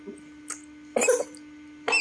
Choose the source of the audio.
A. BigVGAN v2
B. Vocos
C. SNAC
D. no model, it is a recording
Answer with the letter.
D